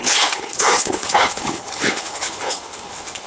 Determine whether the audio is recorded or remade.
remade